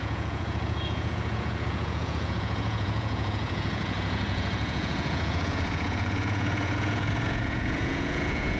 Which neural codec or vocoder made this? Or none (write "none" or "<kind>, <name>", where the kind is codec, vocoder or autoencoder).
vocoder, Vocos